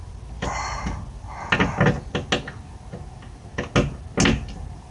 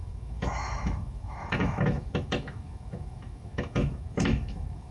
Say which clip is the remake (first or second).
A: second